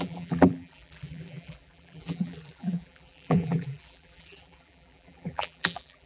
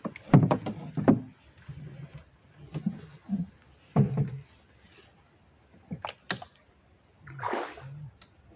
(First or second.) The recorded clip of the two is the second